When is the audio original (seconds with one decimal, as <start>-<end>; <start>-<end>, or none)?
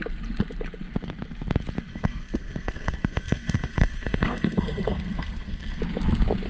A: 0.0-1.9; 5.8-6.5